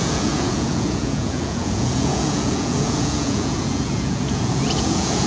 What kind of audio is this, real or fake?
fake